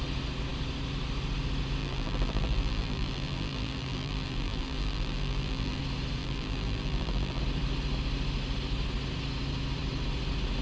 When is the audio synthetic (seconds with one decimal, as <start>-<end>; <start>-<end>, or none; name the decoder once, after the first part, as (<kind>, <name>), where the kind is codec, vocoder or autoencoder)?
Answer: 1.8-5.8 (vocoder, BigVGAN v2); 6.2-7.4